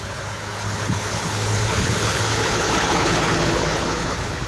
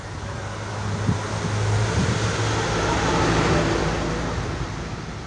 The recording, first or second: second